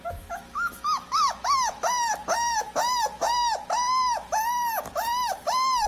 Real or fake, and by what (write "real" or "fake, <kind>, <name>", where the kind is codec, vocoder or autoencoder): fake, autoencoder, DAC-VAE